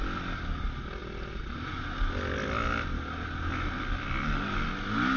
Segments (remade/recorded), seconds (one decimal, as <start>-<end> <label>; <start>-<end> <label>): 0.0-5.2 recorded